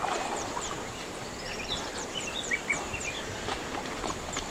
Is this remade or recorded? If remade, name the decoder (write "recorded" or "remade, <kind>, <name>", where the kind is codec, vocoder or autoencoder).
remade, vocoder, BigVGAN v2